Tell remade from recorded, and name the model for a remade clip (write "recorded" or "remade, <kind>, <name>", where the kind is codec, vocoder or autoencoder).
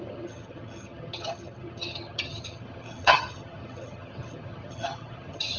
remade, vocoder, HiFi-GAN